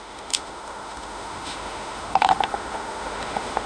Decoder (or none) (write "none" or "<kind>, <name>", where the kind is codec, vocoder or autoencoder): autoencoder, DAC-VAE